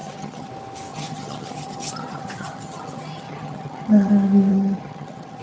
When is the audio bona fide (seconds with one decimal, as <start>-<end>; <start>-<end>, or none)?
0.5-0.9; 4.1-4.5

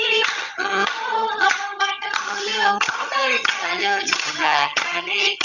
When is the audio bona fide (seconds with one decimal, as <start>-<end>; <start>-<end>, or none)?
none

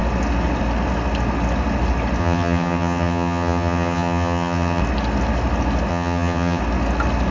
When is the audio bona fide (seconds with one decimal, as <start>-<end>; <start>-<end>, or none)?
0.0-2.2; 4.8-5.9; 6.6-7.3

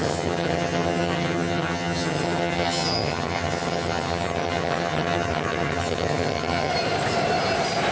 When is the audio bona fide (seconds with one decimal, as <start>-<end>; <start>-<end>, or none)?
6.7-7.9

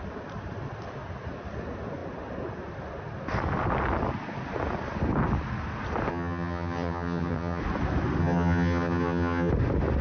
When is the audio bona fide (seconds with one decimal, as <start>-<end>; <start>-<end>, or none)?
0.0-6.1; 7.6-8.2; 9.5-10.0